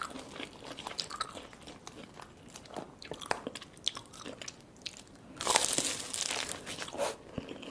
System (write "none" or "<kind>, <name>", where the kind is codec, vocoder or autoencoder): none